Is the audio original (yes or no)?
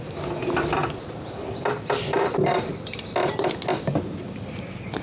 yes